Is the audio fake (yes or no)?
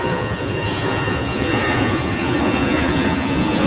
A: yes